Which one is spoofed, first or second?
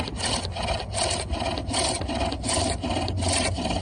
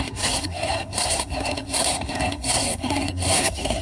second